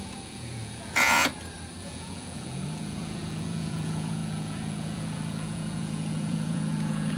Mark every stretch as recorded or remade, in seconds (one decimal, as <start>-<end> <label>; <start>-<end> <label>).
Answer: 0.0-1.3 remade; 1.3-1.8 recorded; 1.8-7.2 remade